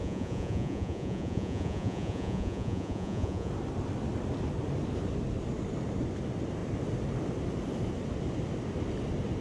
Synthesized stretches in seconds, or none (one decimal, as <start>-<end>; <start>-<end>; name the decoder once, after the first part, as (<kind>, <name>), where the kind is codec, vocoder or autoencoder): 0.0-3.5 (vocoder, Vocos)